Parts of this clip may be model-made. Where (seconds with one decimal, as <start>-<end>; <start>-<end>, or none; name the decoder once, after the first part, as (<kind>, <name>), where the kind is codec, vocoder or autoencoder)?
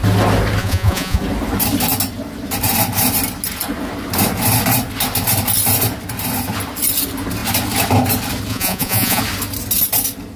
0.6-1.2 (vocoder, Vocos); 8.5-9.2